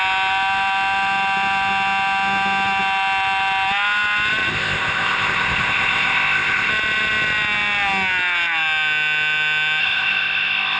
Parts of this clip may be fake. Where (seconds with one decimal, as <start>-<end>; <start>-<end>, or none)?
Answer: 4.5-6.7; 9.8-10.8